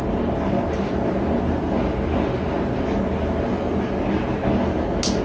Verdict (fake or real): real